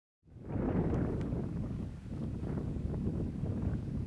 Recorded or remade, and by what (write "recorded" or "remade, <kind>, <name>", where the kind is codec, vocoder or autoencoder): remade, codec, DAC